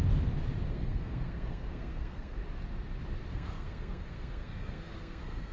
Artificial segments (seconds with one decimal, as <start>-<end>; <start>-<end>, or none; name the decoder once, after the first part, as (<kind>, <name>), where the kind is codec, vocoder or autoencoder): 0.7-2.4 (codec, SNAC); 3.3-5.5